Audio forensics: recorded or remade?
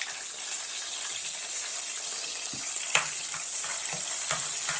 recorded